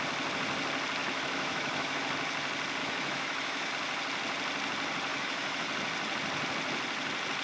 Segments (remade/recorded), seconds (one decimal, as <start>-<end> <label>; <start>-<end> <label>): 0.0-1.0 recorded; 1.0-2.0 remade; 2.0-2.8 recorded; 2.8-3.7 remade; 3.7-5.1 recorded; 5.1-5.7 remade; 5.7-7.4 recorded